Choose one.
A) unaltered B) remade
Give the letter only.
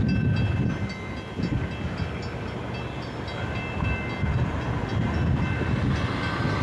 A